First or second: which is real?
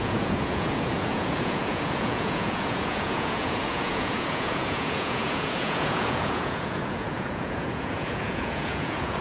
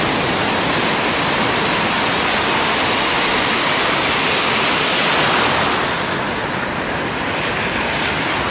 second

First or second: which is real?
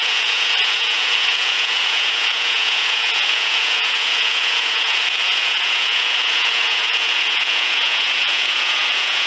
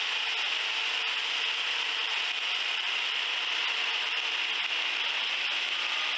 second